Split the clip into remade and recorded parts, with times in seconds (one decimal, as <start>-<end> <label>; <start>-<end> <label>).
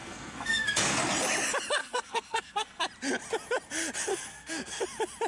0.0-1.0 remade; 1.0-1.8 recorded; 1.8-2.8 remade; 2.8-4.1 recorded; 4.1-4.8 remade; 4.8-5.3 recorded